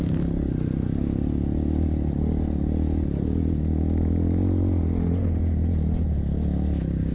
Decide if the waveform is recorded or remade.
recorded